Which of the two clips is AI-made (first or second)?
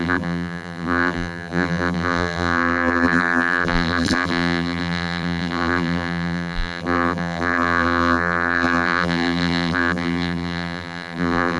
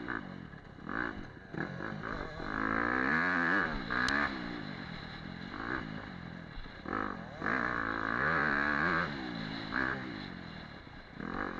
first